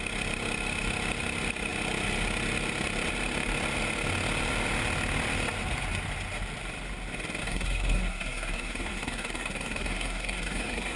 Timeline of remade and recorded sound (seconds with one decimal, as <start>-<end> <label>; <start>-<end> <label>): 0.0-7.4 recorded; 7.4-11.0 remade